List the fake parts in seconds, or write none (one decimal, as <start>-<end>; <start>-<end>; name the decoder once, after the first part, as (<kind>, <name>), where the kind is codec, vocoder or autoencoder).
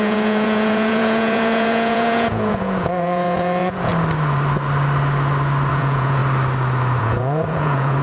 0.0-3.9 (vocoder, Vocos); 5.7-6.2; 7.0-8.0